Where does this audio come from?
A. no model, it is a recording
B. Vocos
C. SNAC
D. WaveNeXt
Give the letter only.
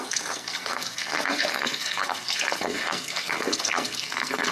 C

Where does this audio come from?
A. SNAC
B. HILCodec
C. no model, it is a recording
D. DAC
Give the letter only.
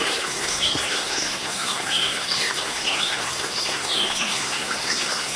A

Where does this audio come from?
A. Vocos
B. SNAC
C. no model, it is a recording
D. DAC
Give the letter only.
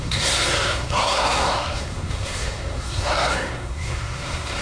B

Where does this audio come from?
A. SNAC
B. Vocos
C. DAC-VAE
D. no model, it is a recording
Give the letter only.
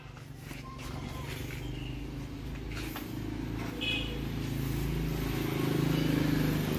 D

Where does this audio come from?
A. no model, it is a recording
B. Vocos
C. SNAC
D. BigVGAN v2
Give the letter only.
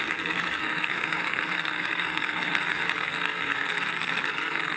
C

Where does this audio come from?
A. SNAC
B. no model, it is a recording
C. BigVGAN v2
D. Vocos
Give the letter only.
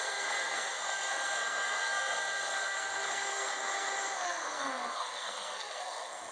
A